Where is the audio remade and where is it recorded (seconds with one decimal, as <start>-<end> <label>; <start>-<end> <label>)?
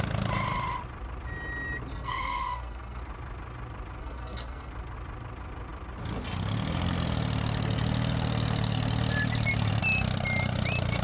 0.0-1.9 recorded; 1.9-3.0 remade; 3.0-4.0 recorded; 4.0-4.7 remade; 4.7-11.0 recorded